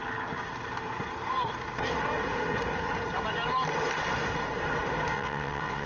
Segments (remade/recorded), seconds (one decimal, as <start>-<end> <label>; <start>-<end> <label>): 0.0-5.1 recorded; 5.1-5.9 remade